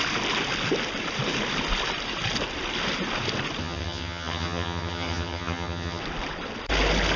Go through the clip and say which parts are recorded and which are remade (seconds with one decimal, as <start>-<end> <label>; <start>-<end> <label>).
0.0-3.6 recorded; 3.6-6.0 remade; 6.0-7.2 recorded

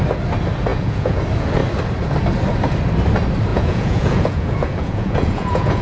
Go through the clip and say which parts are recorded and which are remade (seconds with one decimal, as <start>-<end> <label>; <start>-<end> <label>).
0.0-0.7 recorded; 0.7-1.2 remade; 1.2-3.5 recorded; 3.5-5.8 remade

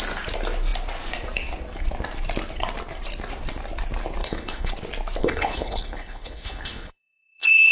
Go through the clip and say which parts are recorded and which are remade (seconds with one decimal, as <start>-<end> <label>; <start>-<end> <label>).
0.0-4.2 recorded; 4.2-4.7 remade; 4.7-5.2 recorded; 5.2-7.7 remade

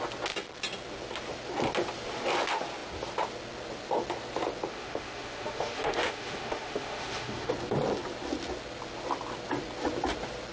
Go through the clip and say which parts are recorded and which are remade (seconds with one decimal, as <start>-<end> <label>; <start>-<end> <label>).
0.0-4.7 recorded; 4.7-7.5 remade; 7.5-10.5 recorded

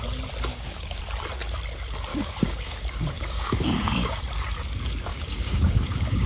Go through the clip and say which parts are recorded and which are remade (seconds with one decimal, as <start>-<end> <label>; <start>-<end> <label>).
0.0-0.5 recorded; 0.5-1.0 remade; 1.0-2.1 recorded; 2.1-4.2 remade; 4.2-5.1 recorded; 5.1-6.3 remade

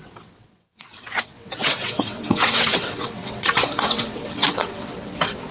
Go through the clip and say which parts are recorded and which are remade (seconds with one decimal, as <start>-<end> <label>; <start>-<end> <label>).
0.0-5.5 remade

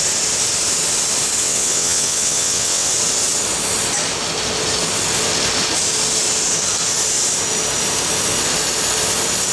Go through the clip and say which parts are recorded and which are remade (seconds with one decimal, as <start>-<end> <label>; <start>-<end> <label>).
0.0-1.4 recorded; 1.4-2.9 remade; 2.9-9.5 recorded